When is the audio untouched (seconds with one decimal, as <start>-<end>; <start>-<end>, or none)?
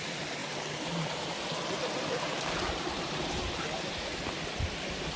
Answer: 0.0-0.4; 3.5-5.2